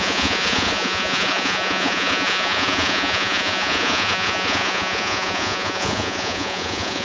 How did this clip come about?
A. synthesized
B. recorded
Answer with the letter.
A